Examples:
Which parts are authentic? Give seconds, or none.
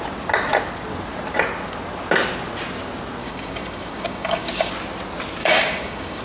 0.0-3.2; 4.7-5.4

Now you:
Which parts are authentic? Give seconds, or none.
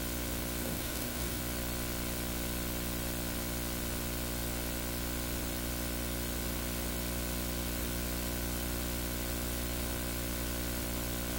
0.0-0.6; 1.4-11.4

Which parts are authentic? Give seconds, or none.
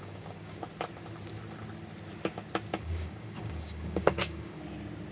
0.6-2.7; 4.6-5.1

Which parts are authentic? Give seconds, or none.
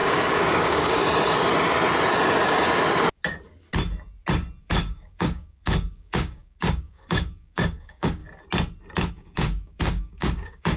1.0-4.6; 8.2-9.1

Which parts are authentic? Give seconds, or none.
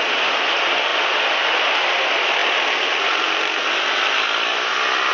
0.0-5.1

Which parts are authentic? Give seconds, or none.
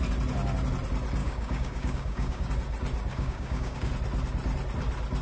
0.0-1.2; 2.5-3.1; 3.9-5.2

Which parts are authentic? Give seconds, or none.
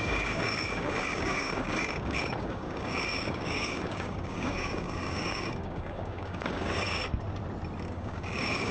7.0-7.9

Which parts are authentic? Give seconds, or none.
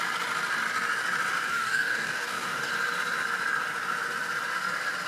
0.0-1.5; 2.7-5.1